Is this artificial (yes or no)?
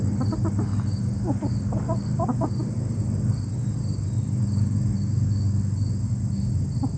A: no